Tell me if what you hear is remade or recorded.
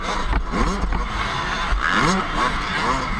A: recorded